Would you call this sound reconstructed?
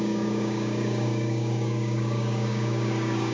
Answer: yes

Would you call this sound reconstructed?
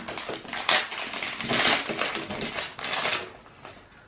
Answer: no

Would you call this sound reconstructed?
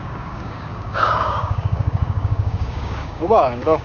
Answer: yes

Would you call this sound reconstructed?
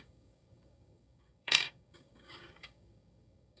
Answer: yes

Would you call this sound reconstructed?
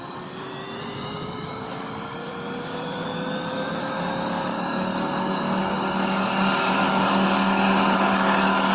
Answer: yes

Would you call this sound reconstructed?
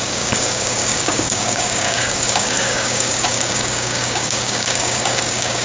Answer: yes